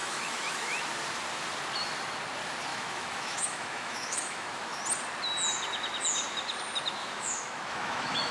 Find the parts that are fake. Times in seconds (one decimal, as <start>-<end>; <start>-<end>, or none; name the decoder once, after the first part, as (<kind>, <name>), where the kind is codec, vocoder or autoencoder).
0.0-0.8 (autoencoder, DAC-VAE); 2.7-4.8; 7.0-8.3